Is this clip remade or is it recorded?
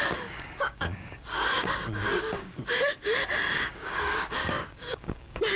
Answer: remade